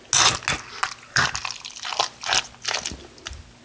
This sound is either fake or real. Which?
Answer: real